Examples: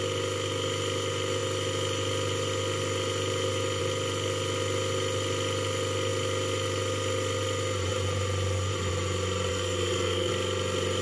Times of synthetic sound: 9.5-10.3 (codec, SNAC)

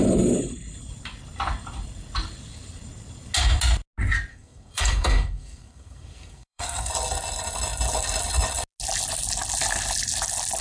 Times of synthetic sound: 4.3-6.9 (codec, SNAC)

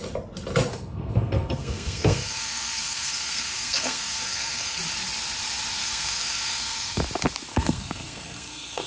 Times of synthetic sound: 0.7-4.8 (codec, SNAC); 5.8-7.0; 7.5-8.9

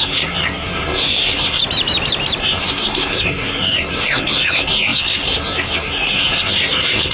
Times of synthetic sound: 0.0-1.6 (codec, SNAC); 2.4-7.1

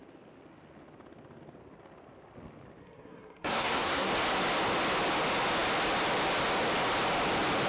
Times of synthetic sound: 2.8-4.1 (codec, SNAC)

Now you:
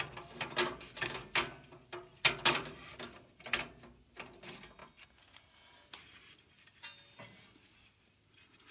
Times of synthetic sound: none

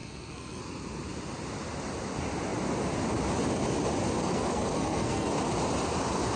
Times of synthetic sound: 0.0-0.6 (codec, SNAC); 4.2-5.3

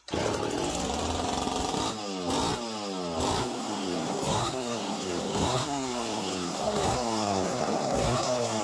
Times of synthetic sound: 3.4-8.6 (codec, SNAC)